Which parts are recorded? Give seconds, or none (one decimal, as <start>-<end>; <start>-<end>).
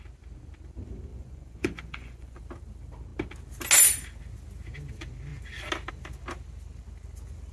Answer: 0.0-1.1; 2.4-7.5